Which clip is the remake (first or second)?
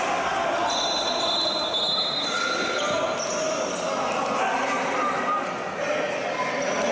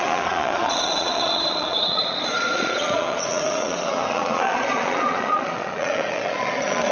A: second